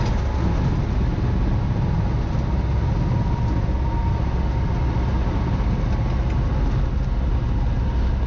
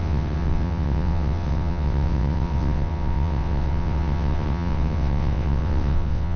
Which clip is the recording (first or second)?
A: first